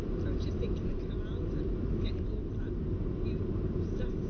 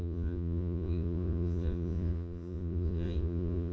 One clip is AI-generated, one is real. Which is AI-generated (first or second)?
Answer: second